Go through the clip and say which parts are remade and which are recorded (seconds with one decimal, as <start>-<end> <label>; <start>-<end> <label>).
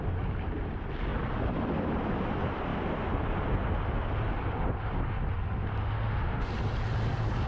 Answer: 0.0-5.8 recorded; 5.8-6.5 remade; 6.5-7.5 recorded